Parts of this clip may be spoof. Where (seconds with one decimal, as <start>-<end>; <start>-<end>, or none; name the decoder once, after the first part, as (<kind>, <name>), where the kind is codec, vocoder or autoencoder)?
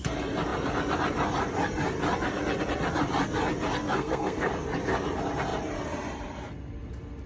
3.8-4.5 (codec, SNAC)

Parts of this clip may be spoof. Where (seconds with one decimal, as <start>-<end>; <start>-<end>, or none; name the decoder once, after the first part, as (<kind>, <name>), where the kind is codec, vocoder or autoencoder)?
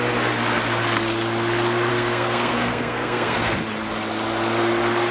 1.9-3.5 (codec, SNAC)